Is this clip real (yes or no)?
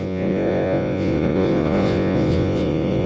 no